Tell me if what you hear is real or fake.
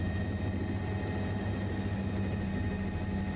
real